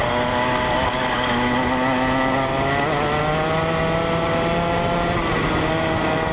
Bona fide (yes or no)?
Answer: yes